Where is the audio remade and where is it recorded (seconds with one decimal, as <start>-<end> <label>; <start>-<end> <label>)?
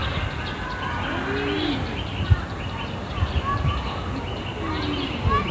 0.0-5.5 recorded